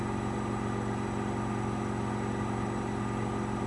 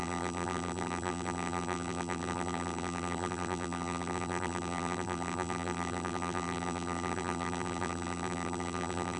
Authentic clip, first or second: first